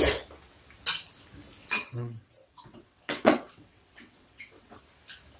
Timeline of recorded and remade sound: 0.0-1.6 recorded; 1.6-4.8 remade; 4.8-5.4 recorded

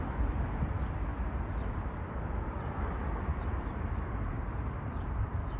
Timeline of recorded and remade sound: 0.0-3.3 recorded; 3.3-5.6 remade

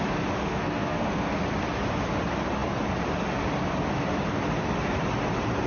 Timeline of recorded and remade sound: 0.0-0.4 recorded; 0.4-1.3 remade; 1.3-5.7 recorded